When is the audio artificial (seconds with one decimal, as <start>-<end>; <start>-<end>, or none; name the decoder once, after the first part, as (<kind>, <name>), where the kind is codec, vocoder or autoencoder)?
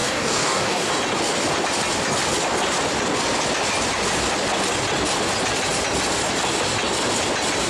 0.0-0.9 (codec, DAC)